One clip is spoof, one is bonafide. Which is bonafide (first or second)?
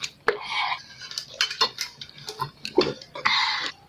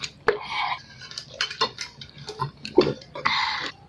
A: first